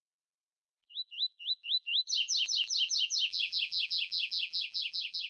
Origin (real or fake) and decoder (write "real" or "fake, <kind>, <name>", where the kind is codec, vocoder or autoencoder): fake, vocoder, BigVGAN v2